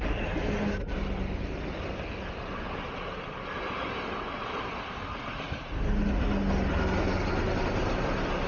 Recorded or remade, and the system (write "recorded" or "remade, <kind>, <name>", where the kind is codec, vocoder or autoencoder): recorded